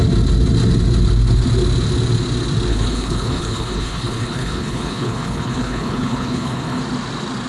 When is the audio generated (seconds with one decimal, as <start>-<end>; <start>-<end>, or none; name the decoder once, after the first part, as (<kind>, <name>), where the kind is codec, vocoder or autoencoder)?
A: 2.7-6.8 (codec, HILCodec)